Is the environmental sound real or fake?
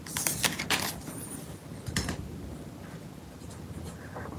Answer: real